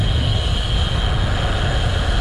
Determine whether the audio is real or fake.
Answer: real